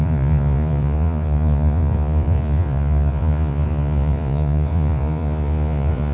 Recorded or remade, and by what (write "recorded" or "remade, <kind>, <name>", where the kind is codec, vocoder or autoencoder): remade, vocoder, Vocos